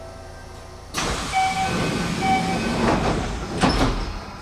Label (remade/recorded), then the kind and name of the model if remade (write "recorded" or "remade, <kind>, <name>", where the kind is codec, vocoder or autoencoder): recorded